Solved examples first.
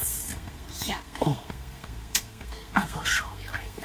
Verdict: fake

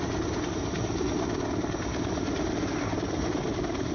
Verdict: real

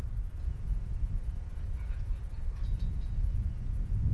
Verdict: fake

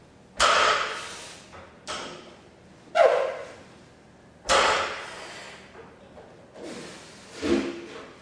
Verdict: real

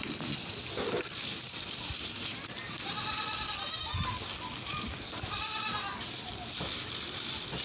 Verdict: real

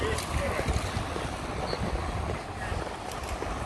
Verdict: real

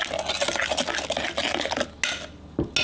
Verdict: real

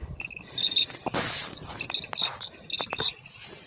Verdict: real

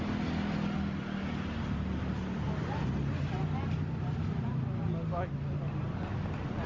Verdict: real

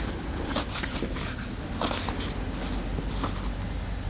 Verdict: real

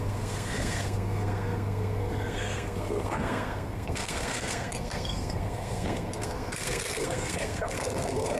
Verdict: fake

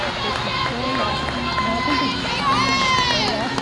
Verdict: real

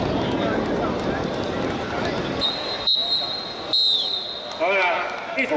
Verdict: real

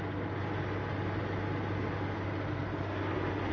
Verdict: real